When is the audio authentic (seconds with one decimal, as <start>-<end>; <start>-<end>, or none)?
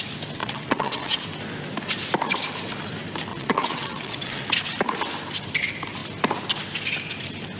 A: 0.0-0.4; 1.2-3.3; 4.5-7.6